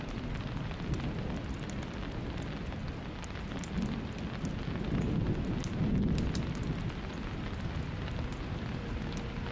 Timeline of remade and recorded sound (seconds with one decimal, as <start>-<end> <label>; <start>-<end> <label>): 0.0-9.5 recorded

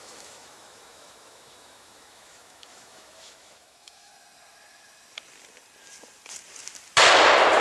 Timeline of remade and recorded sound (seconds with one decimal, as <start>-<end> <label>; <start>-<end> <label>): 0.0-4.1 remade; 4.1-7.6 recorded

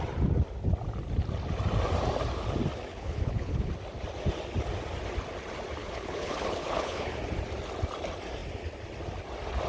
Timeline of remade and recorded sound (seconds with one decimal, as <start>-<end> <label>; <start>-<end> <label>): 0.0-2.9 recorded; 2.9-3.7 remade; 3.7-5.8 recorded; 5.8-7.2 remade; 7.2-9.7 recorded

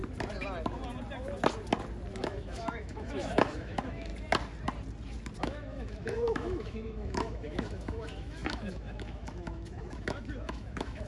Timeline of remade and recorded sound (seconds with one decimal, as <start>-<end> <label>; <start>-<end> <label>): 0.0-2.2 recorded; 2.2-4.1 remade; 4.1-5.4 recorded; 5.4-11.1 remade

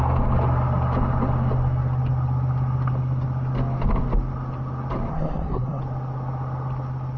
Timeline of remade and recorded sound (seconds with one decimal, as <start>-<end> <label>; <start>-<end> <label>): 0.0-5.1 recorded; 5.1-5.8 remade; 5.8-7.2 recorded

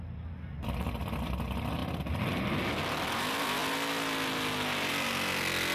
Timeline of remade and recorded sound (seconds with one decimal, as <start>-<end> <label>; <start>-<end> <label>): 0.0-5.7 recorded